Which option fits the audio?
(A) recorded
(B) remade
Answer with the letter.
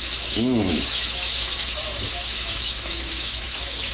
B